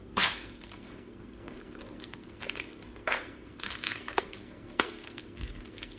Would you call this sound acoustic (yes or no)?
no